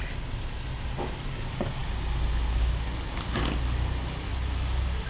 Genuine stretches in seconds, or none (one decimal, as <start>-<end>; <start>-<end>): 0.0-5.1